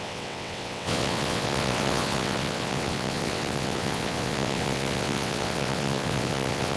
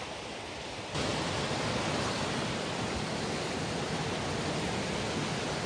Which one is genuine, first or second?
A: second